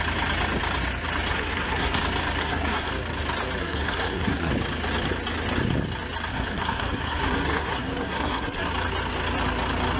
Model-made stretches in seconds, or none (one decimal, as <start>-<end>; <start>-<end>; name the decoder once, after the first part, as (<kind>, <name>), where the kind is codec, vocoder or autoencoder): 1.3-2.0 (codec, SNAC); 2.4-2.9; 3.6-4.5; 6.3-8.7